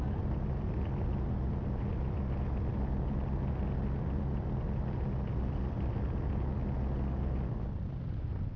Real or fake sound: real